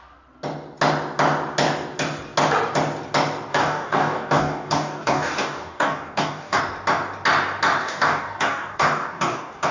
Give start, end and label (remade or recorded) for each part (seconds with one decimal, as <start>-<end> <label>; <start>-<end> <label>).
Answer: 0.0-3.5 recorded; 3.5-6.6 remade; 6.6-7.8 recorded; 7.8-9.7 remade